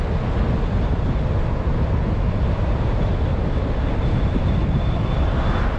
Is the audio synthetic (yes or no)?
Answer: no